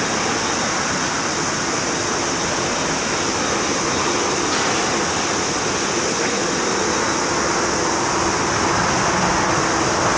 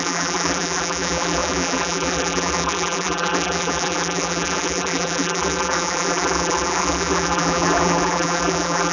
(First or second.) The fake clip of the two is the second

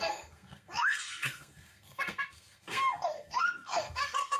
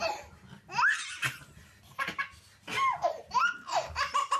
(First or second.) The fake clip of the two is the first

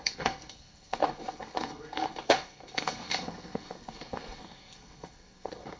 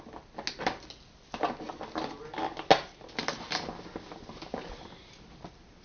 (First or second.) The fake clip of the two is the first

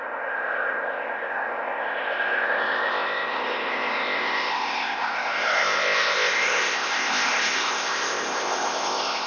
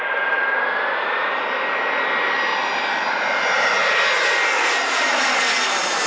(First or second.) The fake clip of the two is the first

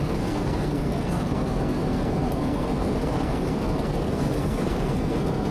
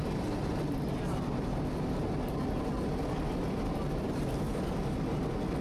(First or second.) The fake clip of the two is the first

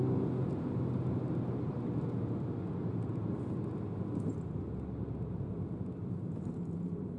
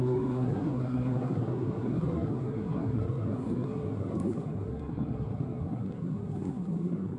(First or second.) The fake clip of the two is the second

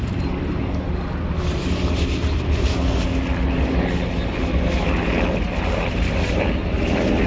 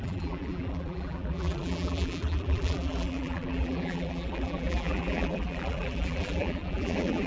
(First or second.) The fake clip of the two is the second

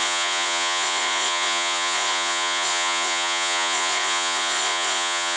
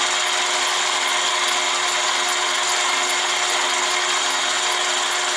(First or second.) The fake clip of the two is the first